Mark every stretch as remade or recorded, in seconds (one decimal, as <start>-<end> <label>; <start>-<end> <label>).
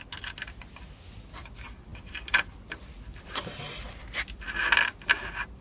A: 0.0-1.9 recorded; 1.9-5.6 remade